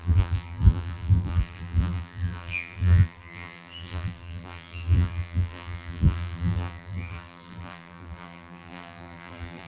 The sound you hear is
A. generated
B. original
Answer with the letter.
A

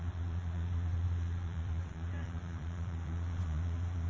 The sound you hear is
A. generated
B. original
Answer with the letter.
A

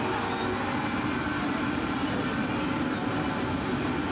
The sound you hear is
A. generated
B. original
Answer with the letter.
B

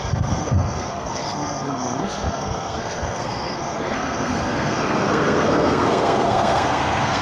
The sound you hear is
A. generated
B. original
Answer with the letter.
A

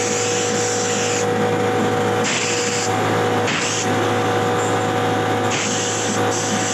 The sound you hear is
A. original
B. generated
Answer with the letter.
A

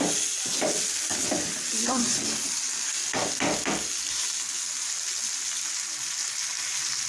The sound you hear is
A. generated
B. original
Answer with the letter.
B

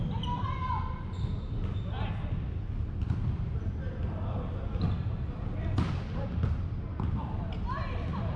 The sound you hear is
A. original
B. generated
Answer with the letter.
A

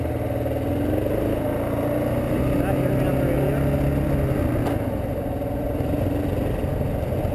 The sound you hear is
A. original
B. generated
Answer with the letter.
A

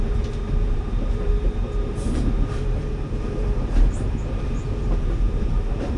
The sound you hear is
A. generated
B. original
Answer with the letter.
A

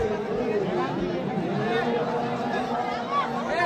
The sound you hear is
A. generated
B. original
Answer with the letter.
B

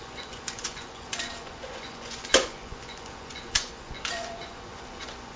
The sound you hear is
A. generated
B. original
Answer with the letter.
A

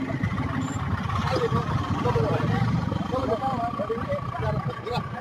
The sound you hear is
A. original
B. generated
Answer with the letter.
A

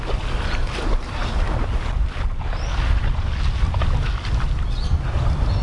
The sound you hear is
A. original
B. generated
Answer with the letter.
A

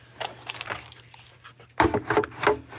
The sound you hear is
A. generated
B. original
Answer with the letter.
B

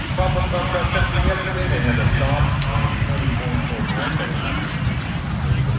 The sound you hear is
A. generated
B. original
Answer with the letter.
B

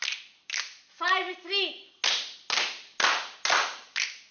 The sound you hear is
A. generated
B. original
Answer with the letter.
B